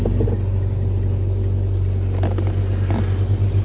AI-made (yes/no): no